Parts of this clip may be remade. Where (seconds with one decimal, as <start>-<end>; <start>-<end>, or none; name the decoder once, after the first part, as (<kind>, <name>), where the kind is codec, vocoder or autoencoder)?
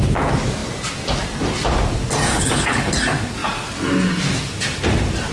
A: 2.3-2.9 (codec, HILCodec)